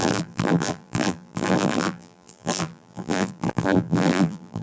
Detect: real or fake fake